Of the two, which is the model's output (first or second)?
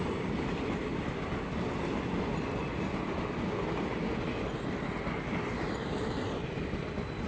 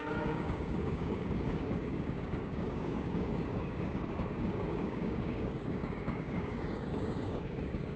second